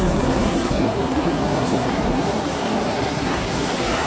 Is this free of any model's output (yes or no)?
no